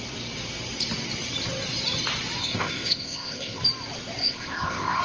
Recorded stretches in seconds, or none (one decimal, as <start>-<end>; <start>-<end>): 0.0-2.4; 3.6-4.2